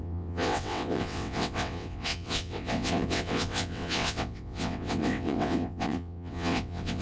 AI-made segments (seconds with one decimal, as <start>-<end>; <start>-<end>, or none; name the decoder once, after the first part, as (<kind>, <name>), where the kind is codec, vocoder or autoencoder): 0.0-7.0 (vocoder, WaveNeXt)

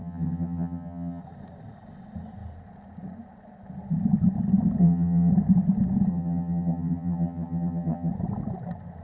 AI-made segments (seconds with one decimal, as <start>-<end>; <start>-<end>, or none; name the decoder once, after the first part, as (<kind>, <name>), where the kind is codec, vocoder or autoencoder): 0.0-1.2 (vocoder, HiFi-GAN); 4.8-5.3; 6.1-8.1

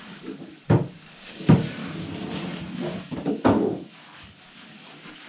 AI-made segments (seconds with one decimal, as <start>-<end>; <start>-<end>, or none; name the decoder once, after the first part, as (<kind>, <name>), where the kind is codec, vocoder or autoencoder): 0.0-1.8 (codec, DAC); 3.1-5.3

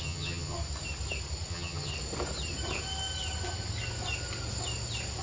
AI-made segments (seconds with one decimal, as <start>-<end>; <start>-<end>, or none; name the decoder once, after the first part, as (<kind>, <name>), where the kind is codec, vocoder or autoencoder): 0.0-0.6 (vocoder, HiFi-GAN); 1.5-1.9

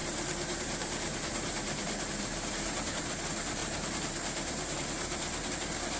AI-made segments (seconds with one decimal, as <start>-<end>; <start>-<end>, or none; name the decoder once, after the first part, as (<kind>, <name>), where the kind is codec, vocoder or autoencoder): 0.0-3.2 (vocoder, BigVGAN v2); 3.6-5.5

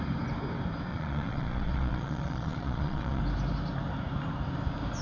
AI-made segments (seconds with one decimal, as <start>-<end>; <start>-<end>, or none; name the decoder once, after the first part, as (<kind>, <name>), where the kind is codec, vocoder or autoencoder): 0.9-3.2 (vocoder, Vocos)